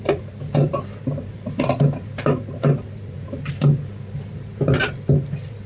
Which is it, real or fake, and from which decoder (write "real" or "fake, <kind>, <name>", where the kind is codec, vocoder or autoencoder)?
real